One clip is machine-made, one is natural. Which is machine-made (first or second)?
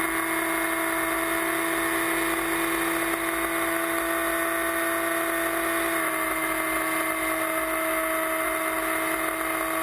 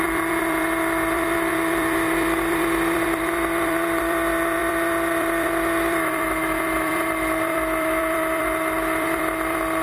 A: second